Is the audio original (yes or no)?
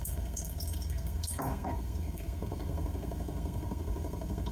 no